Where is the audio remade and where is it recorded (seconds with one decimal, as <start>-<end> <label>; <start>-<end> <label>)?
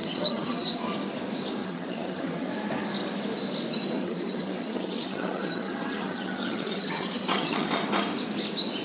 0.0-0.9 remade; 0.9-1.6 recorded; 1.6-2.5 remade; 2.5-4.0 recorded; 4.0-7.7 remade; 7.7-8.8 recorded